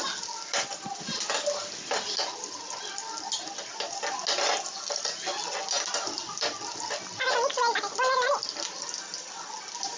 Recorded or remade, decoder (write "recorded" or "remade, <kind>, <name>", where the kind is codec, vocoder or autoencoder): recorded